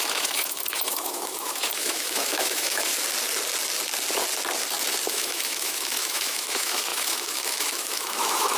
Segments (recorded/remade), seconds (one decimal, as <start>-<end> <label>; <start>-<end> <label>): 0.0-2.9 remade; 2.9-5.1 recorded; 5.1-8.6 remade